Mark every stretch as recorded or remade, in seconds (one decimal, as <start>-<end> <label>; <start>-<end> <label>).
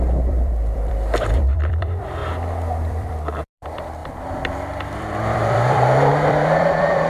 0.0-2.2 remade; 2.2-2.8 recorded; 2.8-4.0 remade; 4.0-5.0 recorded; 5.0-7.1 remade